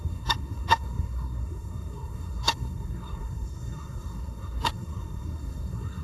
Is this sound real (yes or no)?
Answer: no